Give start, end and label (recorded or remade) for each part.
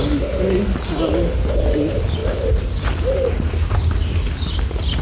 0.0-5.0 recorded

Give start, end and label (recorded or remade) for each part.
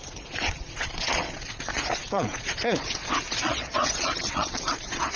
0.0-5.2 remade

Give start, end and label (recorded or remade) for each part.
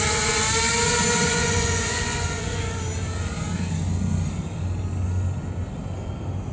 0.0-1.3 recorded; 1.3-2.8 remade; 2.8-6.5 recorded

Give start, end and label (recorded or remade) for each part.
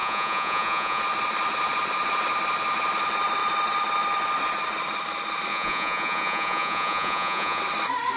0.0-1.0 remade; 1.0-5.5 recorded; 5.5-7.6 remade; 7.6-8.2 recorded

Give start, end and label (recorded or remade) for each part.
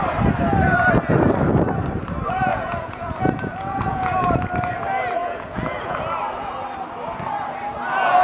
0.0-2.5 recorded; 2.5-4.3 remade; 4.3-5.2 recorded; 5.2-6.0 remade; 6.0-8.2 recorded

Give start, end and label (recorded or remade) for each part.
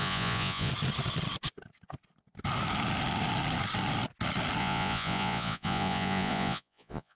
0.0-0.7 remade; 0.7-4.6 recorded; 4.6-7.1 remade